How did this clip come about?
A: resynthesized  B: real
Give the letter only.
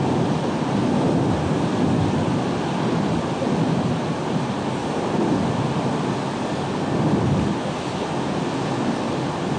B